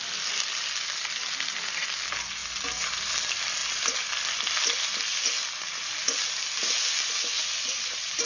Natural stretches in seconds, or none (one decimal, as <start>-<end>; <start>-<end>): 0.0-8.3